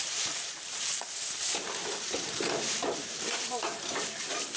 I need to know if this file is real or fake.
fake